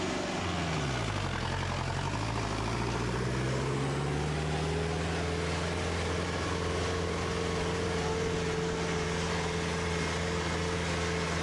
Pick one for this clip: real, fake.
real